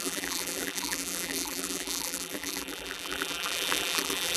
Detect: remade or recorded remade